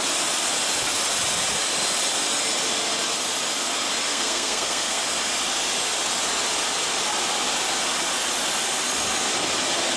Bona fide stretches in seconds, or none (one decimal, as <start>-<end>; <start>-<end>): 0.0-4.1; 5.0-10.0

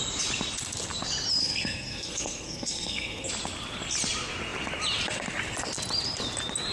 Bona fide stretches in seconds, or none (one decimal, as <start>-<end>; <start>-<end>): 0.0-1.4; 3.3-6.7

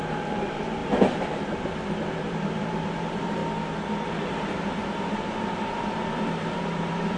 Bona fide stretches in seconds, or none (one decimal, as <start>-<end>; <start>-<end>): 3.4-4.1

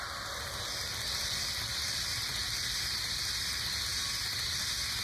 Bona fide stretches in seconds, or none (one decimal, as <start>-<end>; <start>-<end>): 0.0-5.0

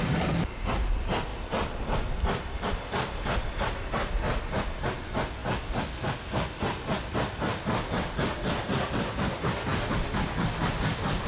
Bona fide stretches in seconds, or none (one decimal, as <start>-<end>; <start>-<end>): 0.0-11.3

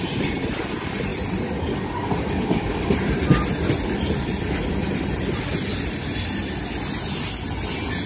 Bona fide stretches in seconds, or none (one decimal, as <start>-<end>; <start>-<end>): 0.0-8.1